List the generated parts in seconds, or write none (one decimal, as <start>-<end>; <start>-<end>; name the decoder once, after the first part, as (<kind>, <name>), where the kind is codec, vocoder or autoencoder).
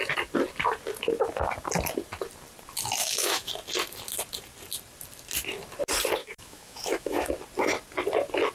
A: 3.0-3.5 (autoencoder, DAC-VAE); 6.2-7.3